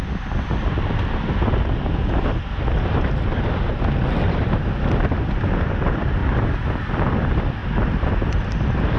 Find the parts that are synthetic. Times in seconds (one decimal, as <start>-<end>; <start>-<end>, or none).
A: none